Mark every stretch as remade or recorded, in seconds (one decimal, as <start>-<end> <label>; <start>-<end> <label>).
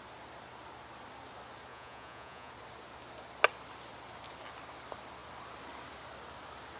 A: 0.0-1.7 recorded; 1.7-2.5 remade; 2.5-6.8 recorded